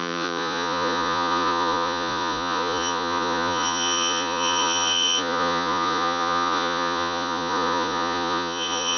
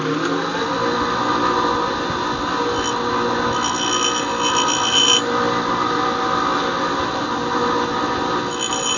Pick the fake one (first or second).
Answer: first